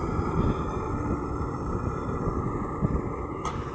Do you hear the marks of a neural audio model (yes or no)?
no